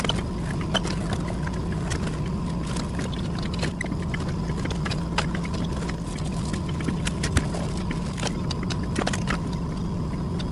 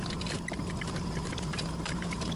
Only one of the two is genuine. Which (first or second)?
first